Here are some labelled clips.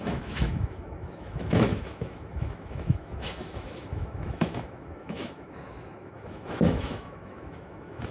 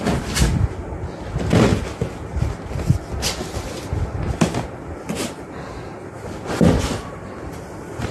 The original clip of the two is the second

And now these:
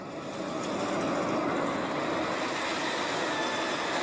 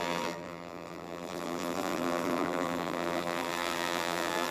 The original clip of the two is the first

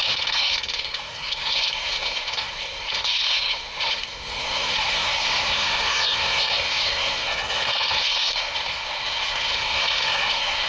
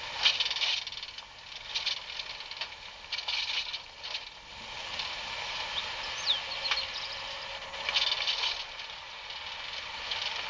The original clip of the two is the second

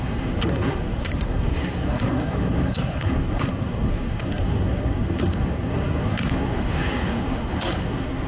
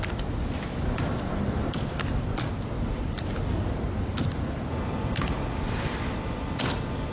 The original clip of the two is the second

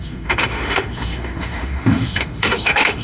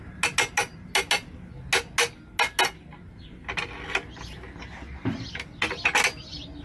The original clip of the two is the second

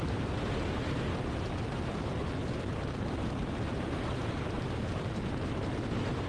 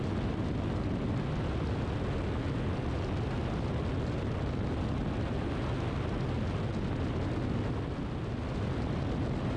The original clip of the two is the second